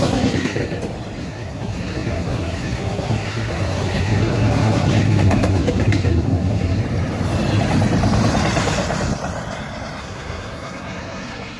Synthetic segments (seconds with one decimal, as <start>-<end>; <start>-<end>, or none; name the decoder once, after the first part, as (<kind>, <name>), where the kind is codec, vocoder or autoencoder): 0.0-0.6 (codec, SNAC); 1.2-6.8; 10.0-11.6